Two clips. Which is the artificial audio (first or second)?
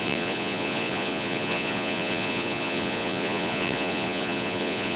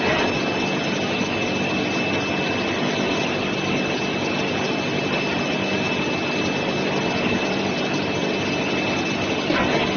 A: first